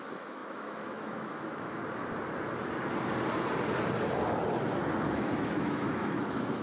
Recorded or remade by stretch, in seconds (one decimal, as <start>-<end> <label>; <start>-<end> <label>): 0.0-1.8 remade; 1.8-5.1 recorded; 5.1-6.6 remade